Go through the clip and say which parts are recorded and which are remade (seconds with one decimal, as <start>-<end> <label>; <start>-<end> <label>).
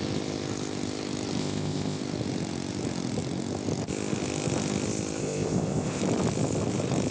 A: 0.0-1.4 recorded; 1.4-2.0 remade; 2.0-5.2 recorded; 5.2-6.0 remade; 6.0-7.1 recorded